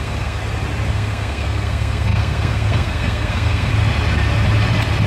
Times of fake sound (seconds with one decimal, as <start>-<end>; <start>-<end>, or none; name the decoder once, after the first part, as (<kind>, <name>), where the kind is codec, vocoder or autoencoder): 0.0-0.4 (codec, SNAC); 0.9-3.7